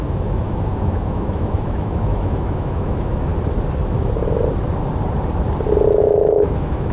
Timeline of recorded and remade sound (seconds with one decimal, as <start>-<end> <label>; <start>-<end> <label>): 0.0-3.3 remade; 3.3-6.0 recorded; 6.0-6.9 remade